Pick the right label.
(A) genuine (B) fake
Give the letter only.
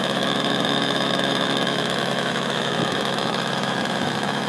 B